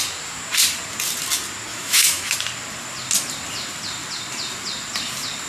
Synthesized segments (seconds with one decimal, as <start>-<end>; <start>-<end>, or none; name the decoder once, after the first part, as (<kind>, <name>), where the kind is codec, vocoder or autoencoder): 1.7-2.3 (autoencoder, DAC-VAE)